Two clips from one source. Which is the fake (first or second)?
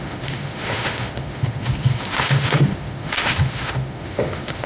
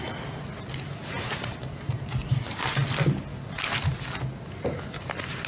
first